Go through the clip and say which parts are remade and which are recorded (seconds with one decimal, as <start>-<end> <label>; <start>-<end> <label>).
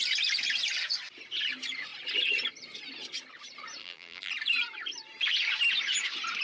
0.0-3.8 recorded; 3.8-4.3 remade; 4.3-6.4 recorded